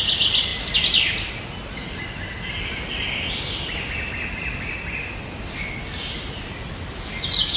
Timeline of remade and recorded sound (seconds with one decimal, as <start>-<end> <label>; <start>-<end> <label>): 0.0-7.6 recorded